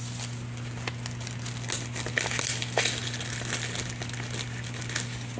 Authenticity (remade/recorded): recorded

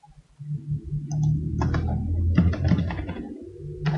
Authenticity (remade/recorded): recorded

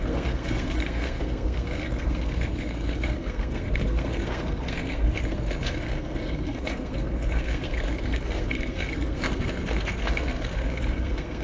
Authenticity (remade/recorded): remade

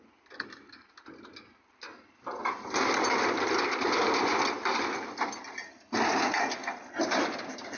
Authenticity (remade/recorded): recorded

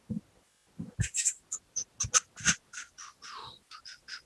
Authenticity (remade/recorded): recorded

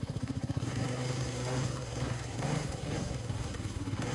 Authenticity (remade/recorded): remade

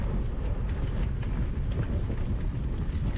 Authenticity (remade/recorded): recorded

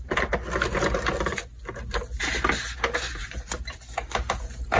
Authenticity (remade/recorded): recorded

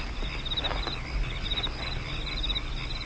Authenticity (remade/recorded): recorded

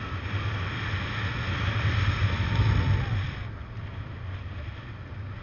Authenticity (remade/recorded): recorded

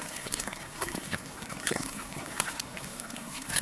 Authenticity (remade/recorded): remade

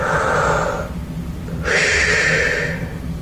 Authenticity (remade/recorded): recorded